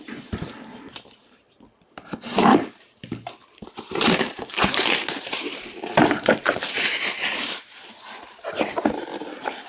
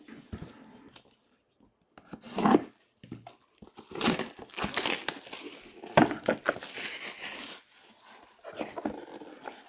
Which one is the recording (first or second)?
second